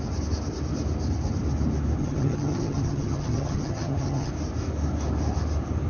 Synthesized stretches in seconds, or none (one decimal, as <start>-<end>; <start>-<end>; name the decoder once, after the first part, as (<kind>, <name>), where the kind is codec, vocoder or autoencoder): 2.0-4.3 (vocoder, HiFi-GAN)